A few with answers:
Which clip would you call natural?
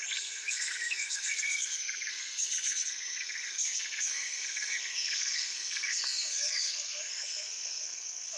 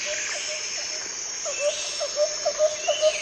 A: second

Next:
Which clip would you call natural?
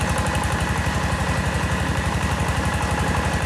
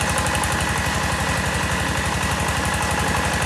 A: second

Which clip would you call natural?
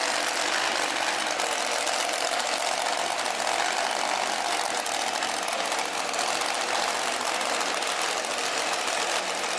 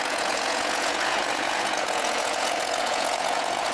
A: first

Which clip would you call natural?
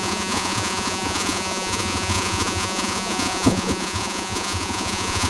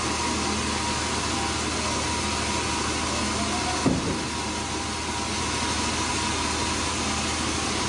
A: second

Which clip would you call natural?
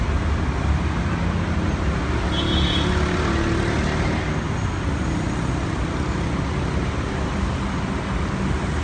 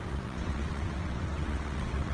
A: first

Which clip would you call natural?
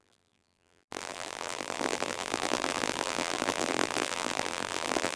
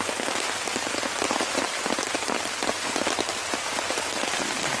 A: second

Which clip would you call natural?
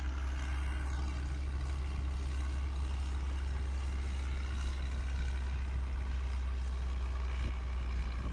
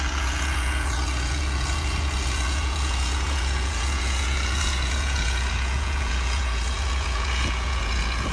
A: first